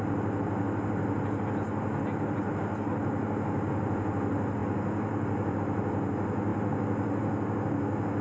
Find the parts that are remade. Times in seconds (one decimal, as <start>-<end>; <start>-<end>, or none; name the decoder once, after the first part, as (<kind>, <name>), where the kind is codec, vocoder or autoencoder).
none